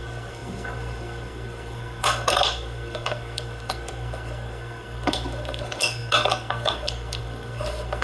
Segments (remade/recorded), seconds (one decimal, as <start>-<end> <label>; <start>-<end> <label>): 0.0-8.0 remade